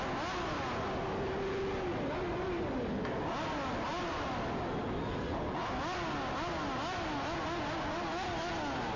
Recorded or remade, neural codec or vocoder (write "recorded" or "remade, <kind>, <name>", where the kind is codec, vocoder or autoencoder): recorded